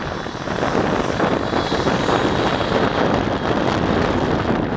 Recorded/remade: remade